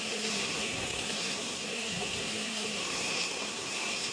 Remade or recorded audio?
remade